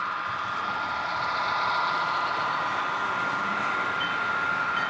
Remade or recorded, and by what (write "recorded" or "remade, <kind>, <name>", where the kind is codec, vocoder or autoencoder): recorded